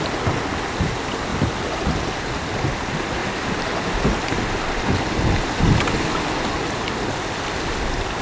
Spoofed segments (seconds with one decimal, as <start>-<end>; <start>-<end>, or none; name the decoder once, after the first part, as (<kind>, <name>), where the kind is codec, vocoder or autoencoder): 1.3-1.8 (vocoder, BigVGAN v2)